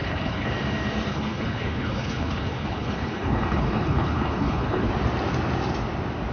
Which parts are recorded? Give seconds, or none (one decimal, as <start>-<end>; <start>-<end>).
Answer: 0.5-1.1; 4.9-6.3